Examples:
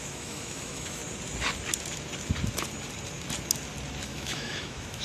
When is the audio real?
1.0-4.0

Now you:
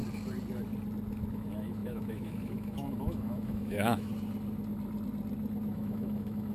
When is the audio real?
0.0-1.3; 4.1-5.7

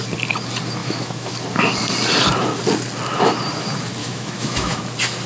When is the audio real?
0.0-0.8; 1.3-4.0; 4.8-5.3

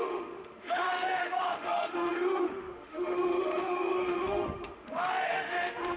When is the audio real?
none